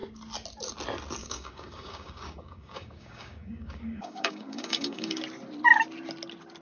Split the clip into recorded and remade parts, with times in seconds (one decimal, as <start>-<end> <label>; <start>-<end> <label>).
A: 0.0-1.2 recorded; 1.2-5.2 remade; 5.2-6.6 recorded